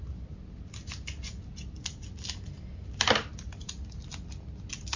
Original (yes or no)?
yes